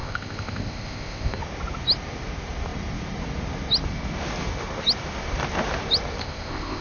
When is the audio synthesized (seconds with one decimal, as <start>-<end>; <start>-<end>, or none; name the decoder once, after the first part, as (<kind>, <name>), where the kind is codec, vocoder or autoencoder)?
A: 0.0-1.4 (codec, ZipCodec); 6.2-6.8